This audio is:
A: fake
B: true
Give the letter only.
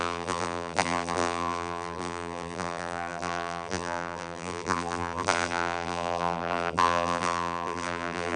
A